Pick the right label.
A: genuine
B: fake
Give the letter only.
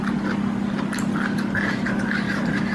A